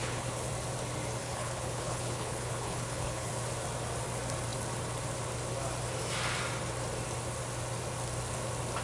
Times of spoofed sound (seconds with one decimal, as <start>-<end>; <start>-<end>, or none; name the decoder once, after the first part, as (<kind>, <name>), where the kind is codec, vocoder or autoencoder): 0.0-0.5 (codec, HILCodec); 1.2-3.3